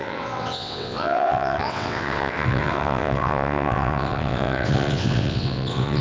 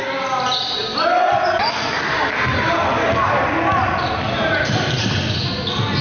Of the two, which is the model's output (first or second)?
first